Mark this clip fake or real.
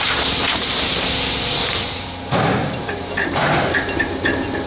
fake